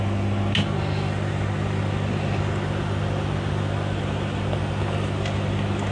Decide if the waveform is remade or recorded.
recorded